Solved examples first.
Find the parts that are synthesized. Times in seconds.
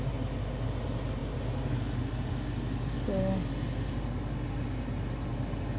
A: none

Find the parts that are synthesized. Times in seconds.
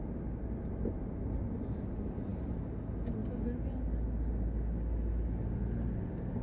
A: none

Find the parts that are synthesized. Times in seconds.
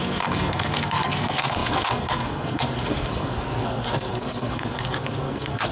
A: 0.0-5.7 (codec, SNAC)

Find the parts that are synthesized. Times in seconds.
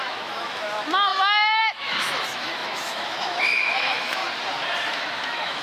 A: 0.0-4.2 (autoencoder, DAC-VAE); 4.9-5.6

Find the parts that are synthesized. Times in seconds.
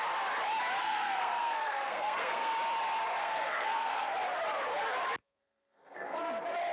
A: 0.8-2.5 (codec, SNAC); 3.2-4.1; 5.2-6.2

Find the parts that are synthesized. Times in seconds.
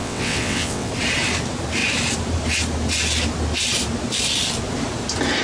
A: 0.0-0.9 (vocoder, WaveNeXt)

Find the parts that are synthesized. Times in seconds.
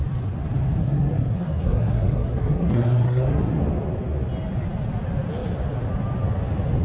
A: 0.8-3.6 (codec, SNAC)